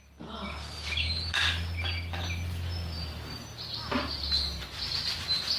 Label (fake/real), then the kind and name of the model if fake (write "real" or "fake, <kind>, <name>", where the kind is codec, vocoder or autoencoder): real